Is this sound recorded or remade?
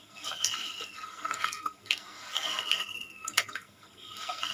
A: remade